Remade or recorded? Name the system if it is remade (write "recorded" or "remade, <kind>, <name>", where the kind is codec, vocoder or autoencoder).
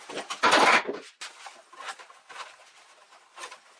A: recorded